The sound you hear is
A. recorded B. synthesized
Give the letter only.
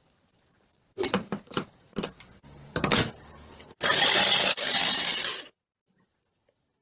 B